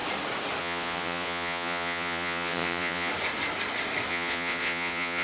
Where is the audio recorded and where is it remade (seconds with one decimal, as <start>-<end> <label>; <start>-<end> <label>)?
0.0-0.6 recorded; 0.6-3.1 remade; 3.1-4.1 recorded; 4.1-5.2 remade